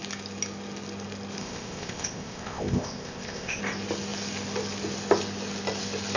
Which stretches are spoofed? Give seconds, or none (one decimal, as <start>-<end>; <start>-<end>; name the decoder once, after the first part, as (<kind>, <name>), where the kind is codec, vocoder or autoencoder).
1.4-3.6 (codec, ZipCodec)